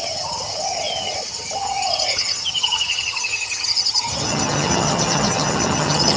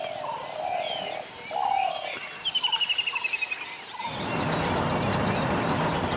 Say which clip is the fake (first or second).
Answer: first